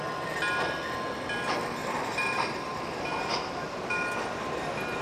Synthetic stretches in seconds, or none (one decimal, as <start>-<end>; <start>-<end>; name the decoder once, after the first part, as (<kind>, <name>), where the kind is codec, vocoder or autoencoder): 1.8-3.7 (vocoder, BigVGAN v2)